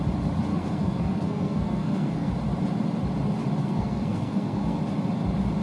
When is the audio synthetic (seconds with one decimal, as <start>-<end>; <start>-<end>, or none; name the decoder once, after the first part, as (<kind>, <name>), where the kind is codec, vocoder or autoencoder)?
0.5-2.3 (codec, SNAC); 3.6-4.8